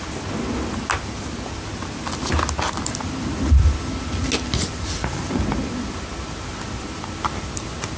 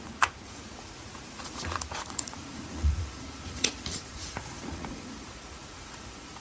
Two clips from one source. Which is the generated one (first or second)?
second